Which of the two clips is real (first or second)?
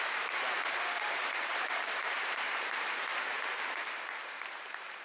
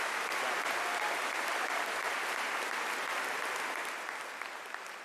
second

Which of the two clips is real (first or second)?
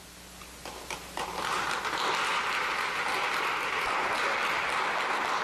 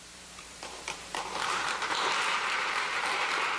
first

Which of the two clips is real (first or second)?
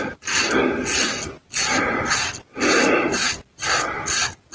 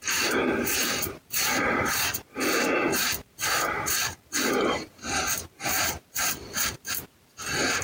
first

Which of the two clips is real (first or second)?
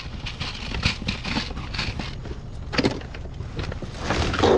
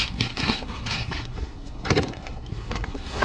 first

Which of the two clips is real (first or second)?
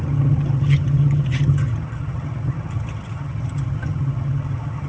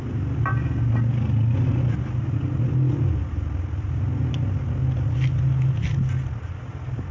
second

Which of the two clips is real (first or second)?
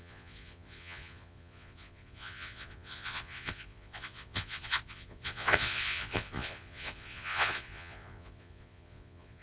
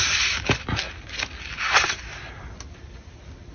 second